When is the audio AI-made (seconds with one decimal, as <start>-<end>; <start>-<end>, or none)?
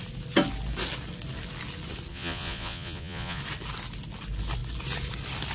2.1-3.4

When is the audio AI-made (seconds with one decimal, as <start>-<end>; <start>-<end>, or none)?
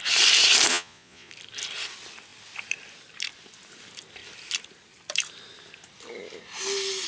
0.7-1.3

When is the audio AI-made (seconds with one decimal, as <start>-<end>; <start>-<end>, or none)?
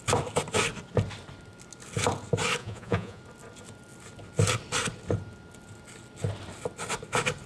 2.6-3.2